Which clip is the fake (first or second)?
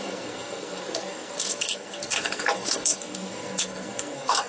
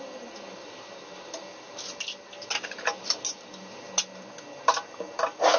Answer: first